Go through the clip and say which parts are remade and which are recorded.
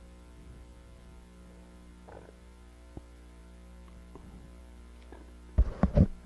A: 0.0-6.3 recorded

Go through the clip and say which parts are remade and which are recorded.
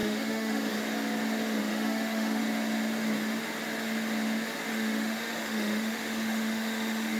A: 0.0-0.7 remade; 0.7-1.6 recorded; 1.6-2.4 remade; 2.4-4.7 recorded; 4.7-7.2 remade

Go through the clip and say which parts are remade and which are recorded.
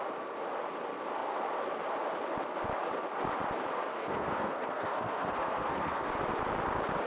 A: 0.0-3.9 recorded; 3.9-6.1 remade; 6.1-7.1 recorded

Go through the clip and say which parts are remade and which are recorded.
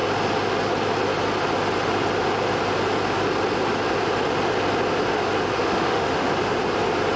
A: 0.0-5.5 recorded; 5.5-6.3 remade; 6.3-7.2 recorded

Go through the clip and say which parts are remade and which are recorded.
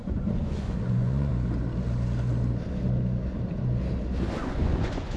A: 0.0-1.3 remade; 1.3-4.4 recorded; 4.4-5.2 remade